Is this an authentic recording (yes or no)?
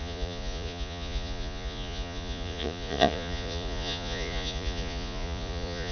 no